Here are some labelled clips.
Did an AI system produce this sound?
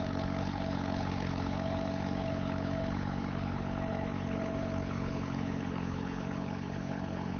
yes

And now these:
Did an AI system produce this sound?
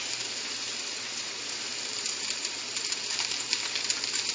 no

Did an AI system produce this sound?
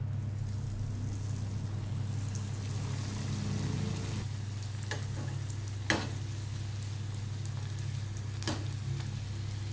no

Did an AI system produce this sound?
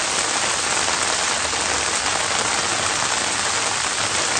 no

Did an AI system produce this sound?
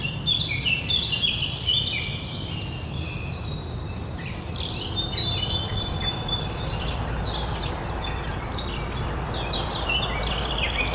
no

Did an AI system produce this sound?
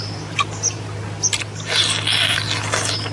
no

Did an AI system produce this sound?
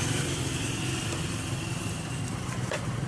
no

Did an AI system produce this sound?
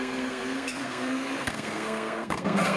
yes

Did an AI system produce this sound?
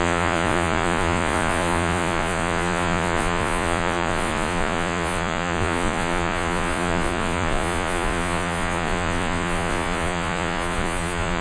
yes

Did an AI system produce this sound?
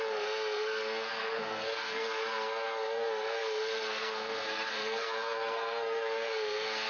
yes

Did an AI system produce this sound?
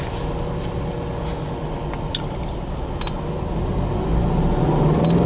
no